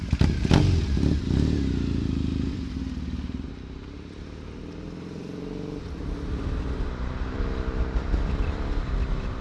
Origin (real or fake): fake